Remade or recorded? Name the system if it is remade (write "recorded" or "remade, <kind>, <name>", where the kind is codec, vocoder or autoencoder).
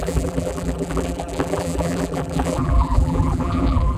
remade, vocoder, BigVGAN v2